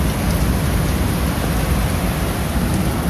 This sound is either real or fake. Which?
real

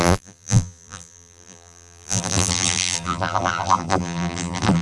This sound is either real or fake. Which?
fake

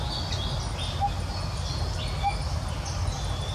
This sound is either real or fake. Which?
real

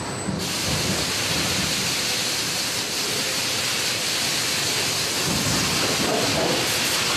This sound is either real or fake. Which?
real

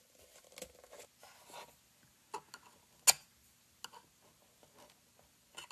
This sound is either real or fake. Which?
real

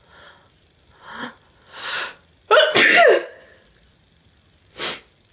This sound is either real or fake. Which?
real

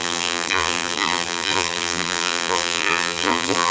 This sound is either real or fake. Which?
fake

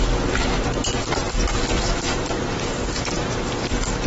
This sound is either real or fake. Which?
real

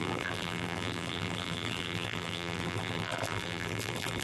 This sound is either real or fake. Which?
fake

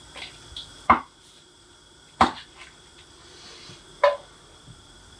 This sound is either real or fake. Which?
fake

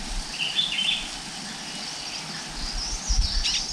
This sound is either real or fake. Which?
real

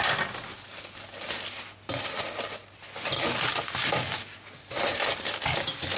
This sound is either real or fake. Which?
real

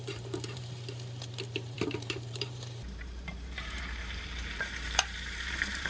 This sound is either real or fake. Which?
fake